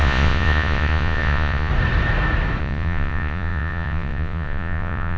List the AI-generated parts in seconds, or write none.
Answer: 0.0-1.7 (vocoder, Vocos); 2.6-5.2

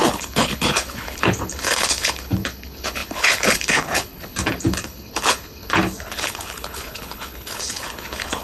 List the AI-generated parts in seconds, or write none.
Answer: 0.0-8.4 (codec, HILCodec)

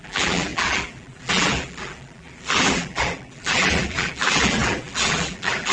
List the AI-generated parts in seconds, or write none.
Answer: 0.0-5.7 (vocoder, BigVGAN v2)

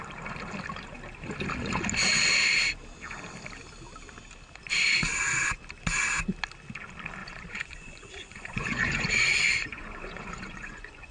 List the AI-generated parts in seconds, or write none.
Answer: 7.2-11.1 (vocoder, Vocos)